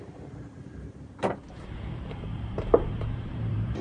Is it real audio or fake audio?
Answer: fake